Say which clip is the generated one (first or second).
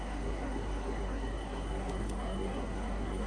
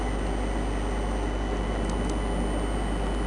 first